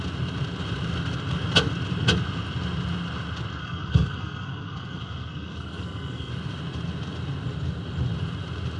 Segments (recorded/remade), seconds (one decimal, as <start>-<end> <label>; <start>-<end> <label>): 0.0-3.6 recorded; 3.6-6.3 remade; 6.3-8.8 recorded